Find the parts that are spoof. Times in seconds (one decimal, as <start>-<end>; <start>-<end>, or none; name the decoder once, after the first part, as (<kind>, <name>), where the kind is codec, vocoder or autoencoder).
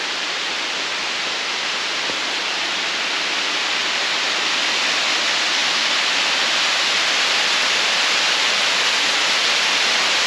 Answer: none